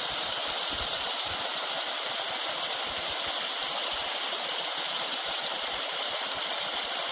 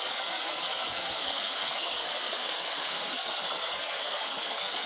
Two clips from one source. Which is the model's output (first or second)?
second